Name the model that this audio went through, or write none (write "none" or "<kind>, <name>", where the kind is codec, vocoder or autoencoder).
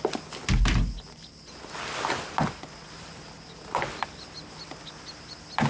none